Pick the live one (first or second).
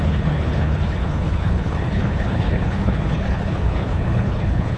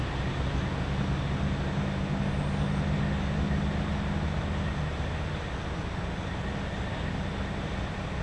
second